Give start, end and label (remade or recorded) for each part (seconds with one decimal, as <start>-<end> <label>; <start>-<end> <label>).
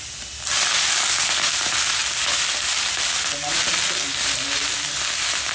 0.0-5.5 recorded